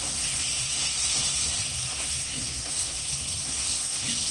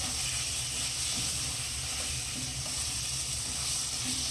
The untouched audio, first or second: second